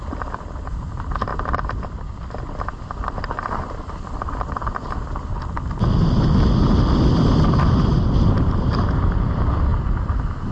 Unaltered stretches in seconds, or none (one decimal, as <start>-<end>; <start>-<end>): 0.0-1.3; 5.4-7.9; 8.8-9.7